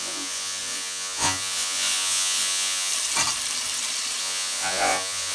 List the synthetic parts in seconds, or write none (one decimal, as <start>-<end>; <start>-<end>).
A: 0.0-2.9; 4.2-5.3